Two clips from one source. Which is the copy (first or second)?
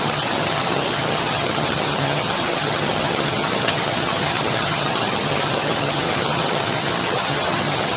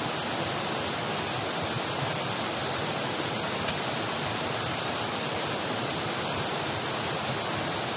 first